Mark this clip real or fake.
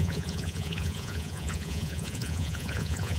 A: fake